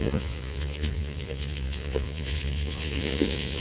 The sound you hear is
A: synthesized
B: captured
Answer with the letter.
A